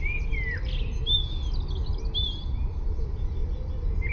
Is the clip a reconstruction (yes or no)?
no